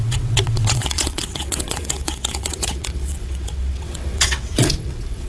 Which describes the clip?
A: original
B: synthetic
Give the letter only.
B